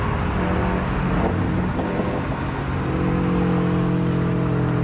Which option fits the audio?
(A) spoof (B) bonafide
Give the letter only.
B